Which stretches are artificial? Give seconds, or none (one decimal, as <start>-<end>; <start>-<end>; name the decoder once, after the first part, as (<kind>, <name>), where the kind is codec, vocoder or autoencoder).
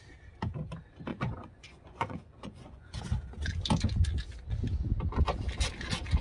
1.1-3.0 (vocoder, Vocos)